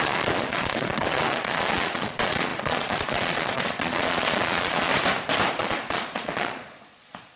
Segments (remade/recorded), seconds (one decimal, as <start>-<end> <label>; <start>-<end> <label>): 0.0-4.9 remade; 4.9-5.5 recorded; 5.5-7.4 remade